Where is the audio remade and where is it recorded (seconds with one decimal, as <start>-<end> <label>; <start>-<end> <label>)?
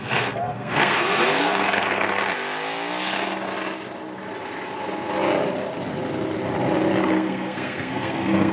0.0-2.2 remade; 2.2-7.0 recorded; 7.0-8.5 remade